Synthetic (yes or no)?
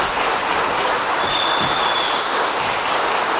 no